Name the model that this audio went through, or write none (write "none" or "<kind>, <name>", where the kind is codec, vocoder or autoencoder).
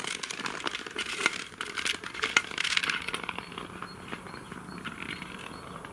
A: none